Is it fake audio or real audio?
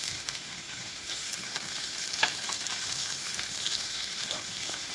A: fake